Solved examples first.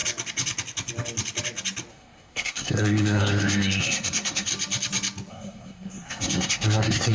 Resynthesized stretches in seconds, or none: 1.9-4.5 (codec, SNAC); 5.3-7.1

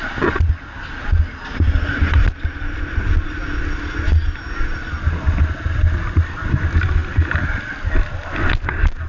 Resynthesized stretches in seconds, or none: none

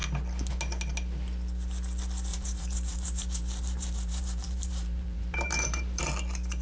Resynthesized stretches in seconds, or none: 2.3-6.0 (vocoder, BigVGAN v2)

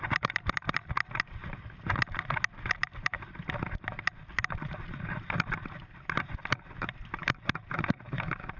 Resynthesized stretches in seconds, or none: 7.2-8.6 (vocoder, BigVGAN v2)

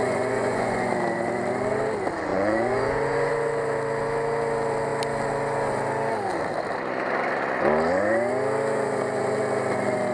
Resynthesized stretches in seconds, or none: 0.0-0.9 (vocoder, Vocos); 2.3-3.3

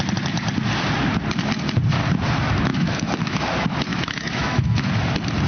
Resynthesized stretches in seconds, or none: 2.7-3.4 (autoencoder, DAC-VAE); 3.9-4.9

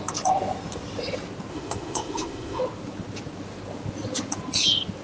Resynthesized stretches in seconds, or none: 1.5-2.6 (autoencoder, DAC-VAE)